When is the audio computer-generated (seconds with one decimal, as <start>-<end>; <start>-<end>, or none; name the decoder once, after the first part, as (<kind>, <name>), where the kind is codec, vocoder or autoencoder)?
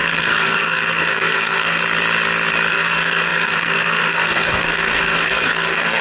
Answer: 0.0-1.8 (codec, SNAC); 2.7-6.0